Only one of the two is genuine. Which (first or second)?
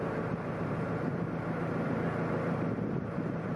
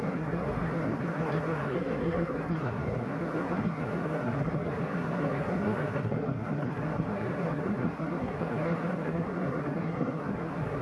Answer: first